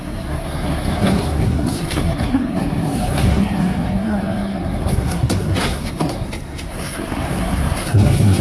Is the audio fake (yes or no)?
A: yes